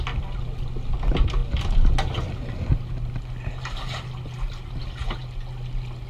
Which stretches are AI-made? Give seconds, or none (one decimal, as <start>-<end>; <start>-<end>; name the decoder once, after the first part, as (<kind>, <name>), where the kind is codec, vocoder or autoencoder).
none